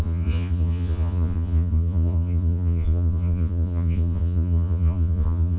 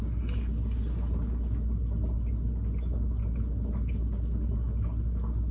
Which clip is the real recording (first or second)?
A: second